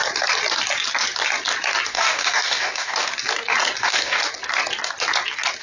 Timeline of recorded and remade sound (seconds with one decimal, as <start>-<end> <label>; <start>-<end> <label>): 0.0-1.9 recorded; 1.9-3.1 remade; 3.1-3.8 recorded; 3.8-4.2 remade; 4.2-5.6 recorded